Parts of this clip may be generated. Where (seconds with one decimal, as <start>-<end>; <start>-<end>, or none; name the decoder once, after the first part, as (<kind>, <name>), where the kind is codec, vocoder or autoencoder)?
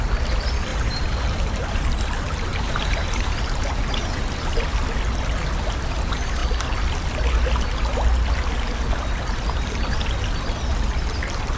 0.7-1.8 (vocoder, BigVGAN v2); 2.5-4.2